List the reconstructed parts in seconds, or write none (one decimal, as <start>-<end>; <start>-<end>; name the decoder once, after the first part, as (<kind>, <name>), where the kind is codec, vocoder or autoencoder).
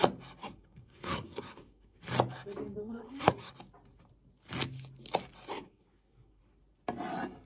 0.4-2.0 (codec, SNAC); 2.8-3.5; 5.5-6.4